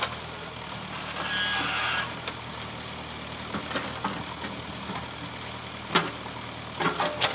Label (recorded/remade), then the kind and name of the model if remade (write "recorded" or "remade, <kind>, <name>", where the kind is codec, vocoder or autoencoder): recorded